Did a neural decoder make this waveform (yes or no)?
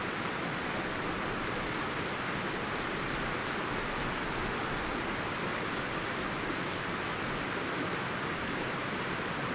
no